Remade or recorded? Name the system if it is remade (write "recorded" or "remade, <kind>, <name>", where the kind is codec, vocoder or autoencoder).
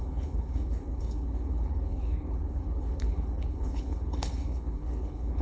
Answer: remade, codec, HILCodec